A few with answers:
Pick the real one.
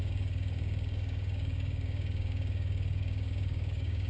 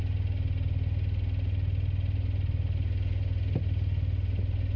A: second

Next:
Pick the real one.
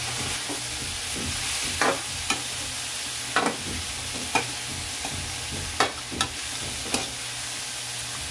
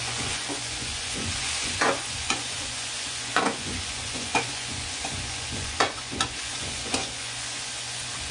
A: first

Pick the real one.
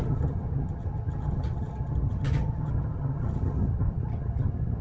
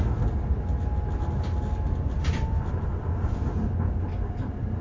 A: second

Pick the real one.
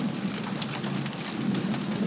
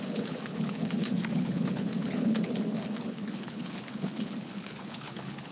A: first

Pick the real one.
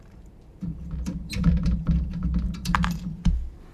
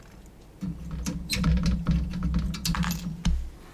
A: second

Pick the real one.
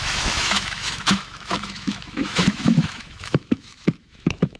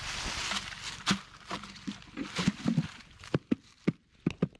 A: second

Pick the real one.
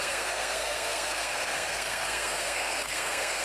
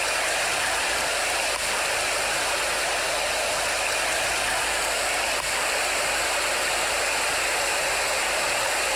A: second